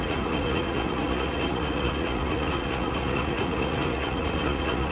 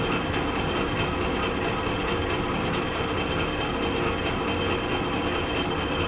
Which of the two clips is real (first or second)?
second